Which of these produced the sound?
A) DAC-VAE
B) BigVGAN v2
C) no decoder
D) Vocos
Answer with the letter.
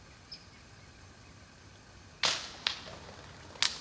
C